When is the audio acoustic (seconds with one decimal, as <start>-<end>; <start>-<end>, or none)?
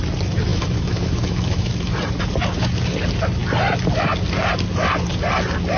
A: 0.0-0.5; 1.9-5.8